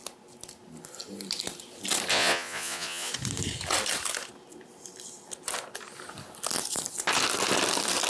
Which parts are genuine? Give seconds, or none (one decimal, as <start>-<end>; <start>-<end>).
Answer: 0.0-2.1; 3.1-8.1